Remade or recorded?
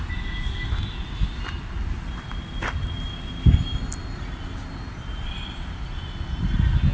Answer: recorded